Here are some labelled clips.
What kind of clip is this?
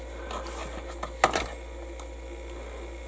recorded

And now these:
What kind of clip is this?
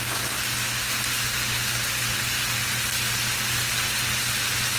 recorded